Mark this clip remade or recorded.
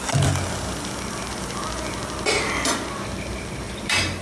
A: remade